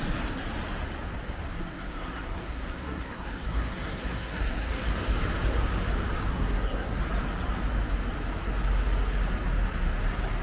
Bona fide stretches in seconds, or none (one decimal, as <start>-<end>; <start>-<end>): 0.0-1.6; 4.7-6.3; 7.0-10.4